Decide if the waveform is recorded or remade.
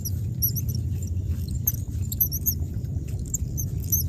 remade